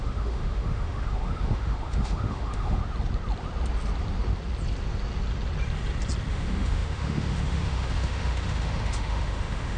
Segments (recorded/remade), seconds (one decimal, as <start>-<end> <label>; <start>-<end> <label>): 0.0-2.8 remade; 2.8-6.3 recorded; 6.3-9.8 remade